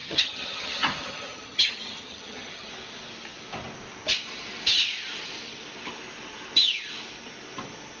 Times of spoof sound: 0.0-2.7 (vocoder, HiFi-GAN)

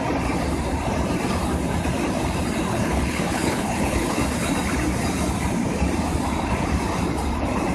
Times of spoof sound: 2.7-4.2 (codec, HILCodec)

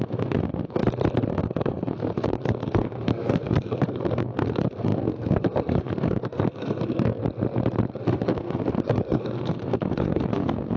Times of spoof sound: 0.0-0.8 (codec, SNAC); 1.3-7.2; 7.9-10.8

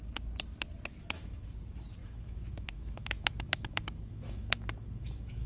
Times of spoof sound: 0.9-1.6 (autoencoder, DAC-VAE); 2.0-5.5